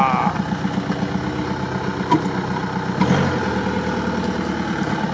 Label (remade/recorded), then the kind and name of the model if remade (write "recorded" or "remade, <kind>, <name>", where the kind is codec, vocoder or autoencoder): recorded